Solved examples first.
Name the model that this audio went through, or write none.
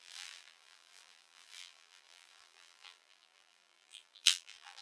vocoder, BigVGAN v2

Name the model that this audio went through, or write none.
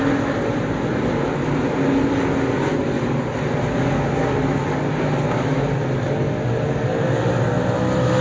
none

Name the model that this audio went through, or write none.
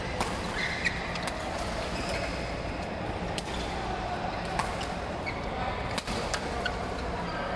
vocoder, BigVGAN v2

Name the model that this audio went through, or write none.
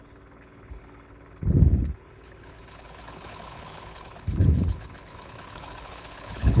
codec, HILCodec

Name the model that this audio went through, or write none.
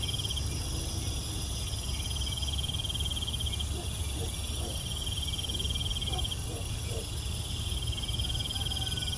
none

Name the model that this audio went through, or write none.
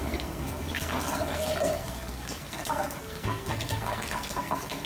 codec, SNAC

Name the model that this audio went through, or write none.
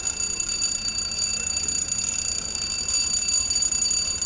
none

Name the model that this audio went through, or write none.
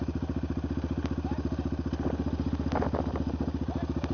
vocoder, BigVGAN v2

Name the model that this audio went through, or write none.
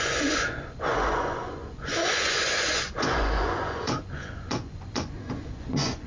vocoder, Vocos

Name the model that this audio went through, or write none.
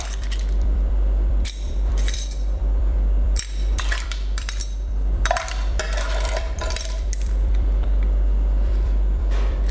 vocoder, BigVGAN v2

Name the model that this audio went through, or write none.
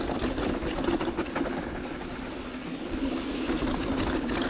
none